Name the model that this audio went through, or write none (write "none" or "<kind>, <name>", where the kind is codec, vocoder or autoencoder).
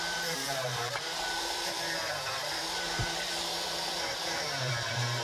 vocoder, BigVGAN v2